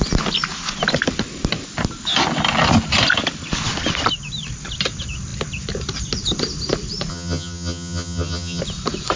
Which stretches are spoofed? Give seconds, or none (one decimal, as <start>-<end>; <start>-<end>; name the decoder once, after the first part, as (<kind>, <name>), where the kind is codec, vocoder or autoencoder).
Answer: 7.1-8.6 (vocoder, HiFi-GAN)